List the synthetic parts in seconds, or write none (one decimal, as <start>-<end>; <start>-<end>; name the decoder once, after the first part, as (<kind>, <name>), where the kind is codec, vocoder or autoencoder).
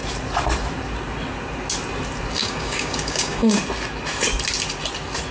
2.4-3.6 (codec, DAC)